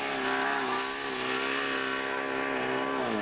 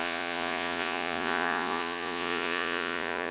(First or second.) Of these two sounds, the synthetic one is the second